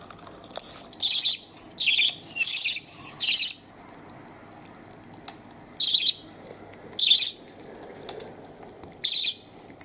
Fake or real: real